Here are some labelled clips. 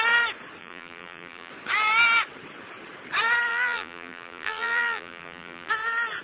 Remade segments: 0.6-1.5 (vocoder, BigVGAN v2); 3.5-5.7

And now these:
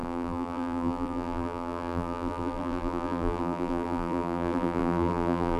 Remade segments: 0.0-5.6 (vocoder, BigVGAN v2)

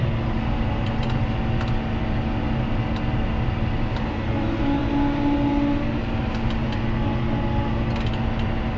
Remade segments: none